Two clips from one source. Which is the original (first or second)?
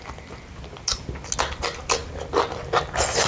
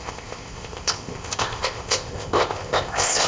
first